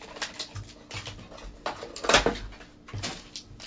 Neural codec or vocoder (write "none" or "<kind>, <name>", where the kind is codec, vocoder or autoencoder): none